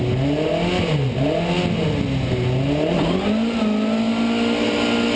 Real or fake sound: real